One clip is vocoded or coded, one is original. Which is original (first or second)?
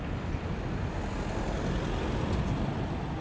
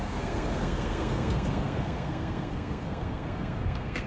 first